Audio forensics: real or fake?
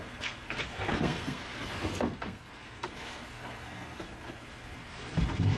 fake